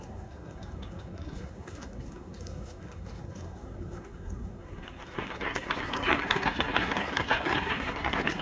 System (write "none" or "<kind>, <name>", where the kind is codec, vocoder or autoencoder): codec, SNAC